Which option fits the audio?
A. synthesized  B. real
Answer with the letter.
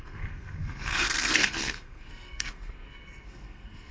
A